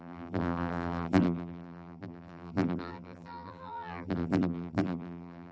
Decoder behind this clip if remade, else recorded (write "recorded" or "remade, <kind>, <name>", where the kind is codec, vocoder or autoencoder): remade, vocoder, BigVGAN v2